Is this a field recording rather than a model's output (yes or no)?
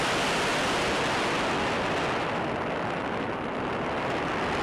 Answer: yes